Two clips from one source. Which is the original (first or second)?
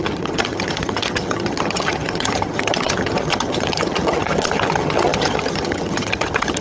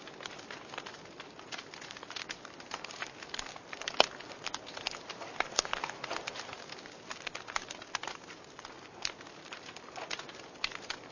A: second